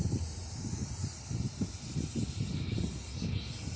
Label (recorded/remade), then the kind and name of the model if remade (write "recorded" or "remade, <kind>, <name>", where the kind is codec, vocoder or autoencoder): recorded